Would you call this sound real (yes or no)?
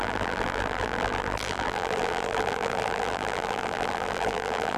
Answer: no